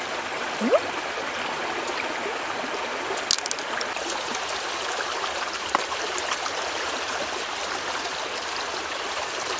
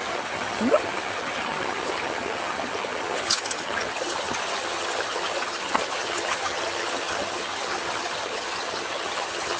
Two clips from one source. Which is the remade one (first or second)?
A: second